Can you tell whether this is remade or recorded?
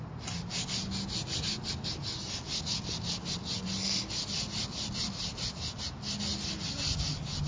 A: recorded